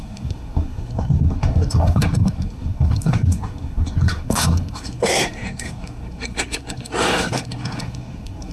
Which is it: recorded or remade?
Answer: remade